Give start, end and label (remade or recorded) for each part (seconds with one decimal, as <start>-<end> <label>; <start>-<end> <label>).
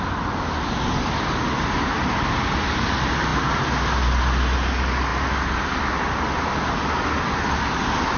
0.0-5.1 recorded; 5.1-5.8 remade; 5.8-8.2 recorded